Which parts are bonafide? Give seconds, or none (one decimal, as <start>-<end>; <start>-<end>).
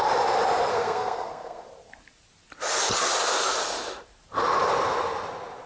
0.0-0.7; 1.7-5.7